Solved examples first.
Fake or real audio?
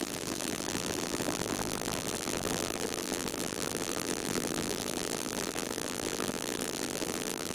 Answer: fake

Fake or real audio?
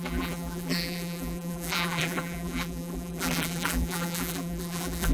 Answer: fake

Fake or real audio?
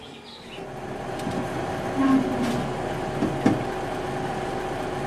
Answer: real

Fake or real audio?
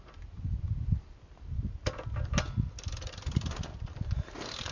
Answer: real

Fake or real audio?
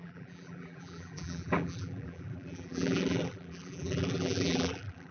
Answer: fake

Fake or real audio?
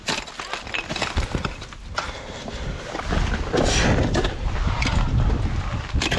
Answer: real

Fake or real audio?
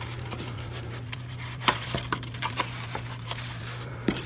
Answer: fake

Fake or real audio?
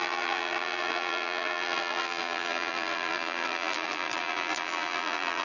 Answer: fake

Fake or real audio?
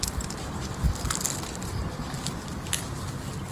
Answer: real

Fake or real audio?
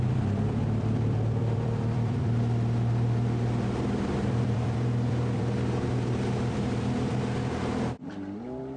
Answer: fake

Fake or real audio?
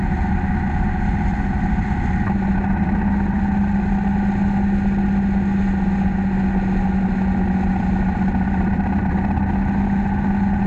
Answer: real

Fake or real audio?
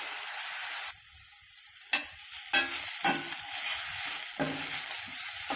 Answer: real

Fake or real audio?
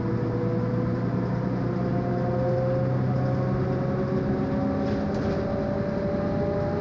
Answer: real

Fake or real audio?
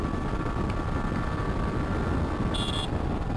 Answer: real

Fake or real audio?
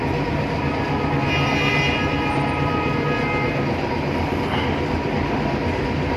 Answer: real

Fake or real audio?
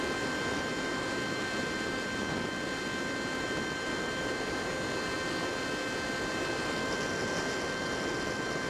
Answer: real